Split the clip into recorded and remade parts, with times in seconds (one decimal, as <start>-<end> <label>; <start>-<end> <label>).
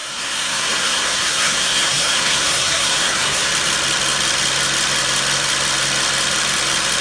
0.0-3.5 remade; 3.5-7.0 recorded